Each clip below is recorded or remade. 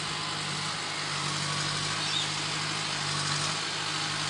recorded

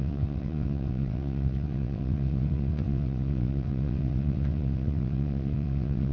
remade